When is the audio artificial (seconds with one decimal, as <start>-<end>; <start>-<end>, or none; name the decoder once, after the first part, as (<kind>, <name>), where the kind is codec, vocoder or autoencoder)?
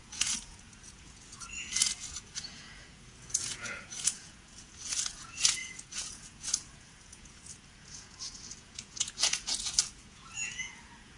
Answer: 0.0-11.2 (vocoder, Vocos)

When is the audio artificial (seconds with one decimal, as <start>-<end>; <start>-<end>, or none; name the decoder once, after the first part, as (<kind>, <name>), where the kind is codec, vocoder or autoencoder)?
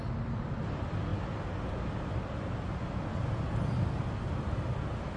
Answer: none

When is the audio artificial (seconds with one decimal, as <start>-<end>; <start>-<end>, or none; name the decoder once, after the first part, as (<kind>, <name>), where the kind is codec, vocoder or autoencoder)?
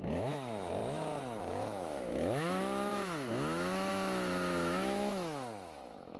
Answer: 0.0-0.8 (autoencoder, DAC-VAE); 1.4-6.2